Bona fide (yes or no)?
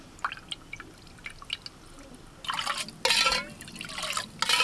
yes